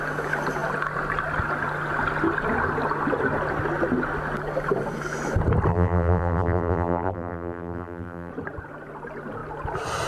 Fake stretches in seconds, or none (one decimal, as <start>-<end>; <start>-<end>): 5.7-8.3